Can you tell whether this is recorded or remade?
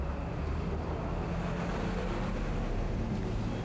recorded